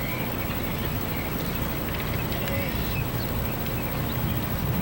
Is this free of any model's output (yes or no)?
yes